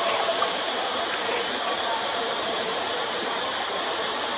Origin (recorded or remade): remade